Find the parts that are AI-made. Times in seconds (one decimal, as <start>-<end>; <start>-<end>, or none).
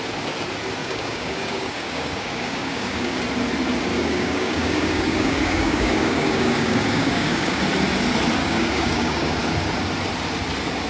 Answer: 0.8-3.2; 3.9-7.6; 8.4-9.4